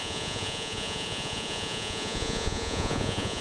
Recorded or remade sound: remade